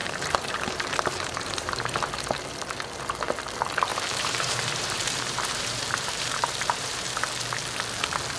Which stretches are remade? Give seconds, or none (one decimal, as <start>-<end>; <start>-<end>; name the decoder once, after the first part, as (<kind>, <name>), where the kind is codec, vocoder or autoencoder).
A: 0.0-2.1 (vocoder, BigVGAN v2); 3.9-7.2